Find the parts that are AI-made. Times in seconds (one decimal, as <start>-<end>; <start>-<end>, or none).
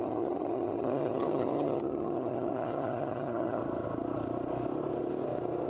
0.0-3.6